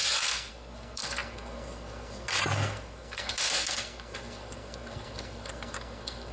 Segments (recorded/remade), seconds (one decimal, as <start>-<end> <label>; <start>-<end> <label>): 0.0-6.3 remade